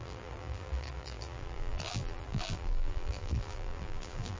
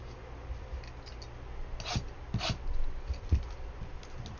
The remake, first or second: first